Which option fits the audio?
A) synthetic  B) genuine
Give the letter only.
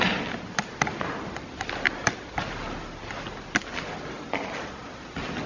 B